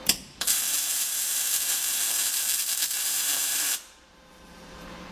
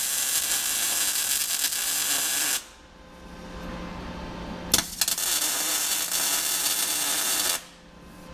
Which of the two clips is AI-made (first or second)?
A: first